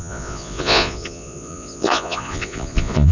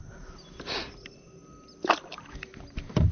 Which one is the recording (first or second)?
second